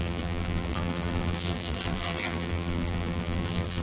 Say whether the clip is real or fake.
fake